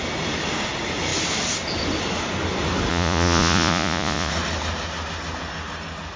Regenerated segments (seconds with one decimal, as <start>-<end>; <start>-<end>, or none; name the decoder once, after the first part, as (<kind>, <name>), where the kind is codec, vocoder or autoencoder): 2.9-4.3 (vocoder, Vocos)

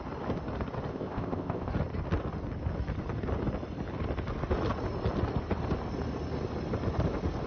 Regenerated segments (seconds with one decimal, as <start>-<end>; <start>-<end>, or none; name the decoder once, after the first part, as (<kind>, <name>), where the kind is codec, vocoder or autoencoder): 0.9-1.7 (codec, ZipCodec)

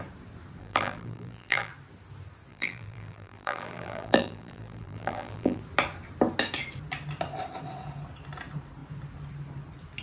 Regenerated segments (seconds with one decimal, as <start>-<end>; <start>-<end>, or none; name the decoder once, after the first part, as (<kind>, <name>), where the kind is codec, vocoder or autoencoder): 0.6-1.7 (vocoder, BigVGAN v2); 2.5-5.6